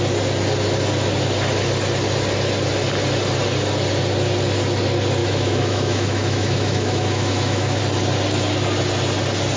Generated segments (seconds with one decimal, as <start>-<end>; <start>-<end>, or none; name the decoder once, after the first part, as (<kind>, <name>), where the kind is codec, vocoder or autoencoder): 5.2-7.8 (autoencoder, DAC-VAE)

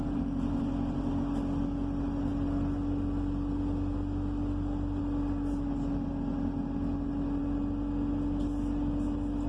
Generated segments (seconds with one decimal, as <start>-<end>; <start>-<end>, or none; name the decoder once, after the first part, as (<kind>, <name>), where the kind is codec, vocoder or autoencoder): 0.0-1.1 (vocoder, BigVGAN v2)

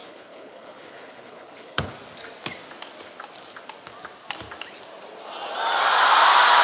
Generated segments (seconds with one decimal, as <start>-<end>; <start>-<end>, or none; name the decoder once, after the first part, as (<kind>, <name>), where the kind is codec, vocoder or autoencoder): 0.0-1.9 (codec, HILCodec)